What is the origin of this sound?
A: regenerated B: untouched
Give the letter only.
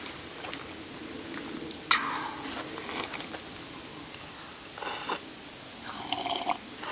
B